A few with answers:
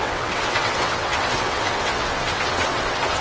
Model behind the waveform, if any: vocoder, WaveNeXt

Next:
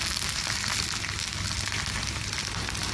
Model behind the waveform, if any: none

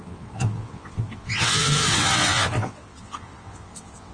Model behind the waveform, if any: vocoder, WaveNeXt